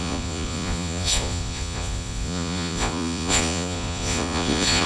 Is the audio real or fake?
fake